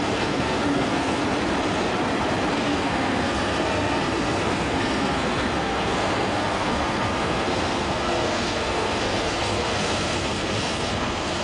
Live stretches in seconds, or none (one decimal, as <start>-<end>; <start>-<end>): 1.2-2.5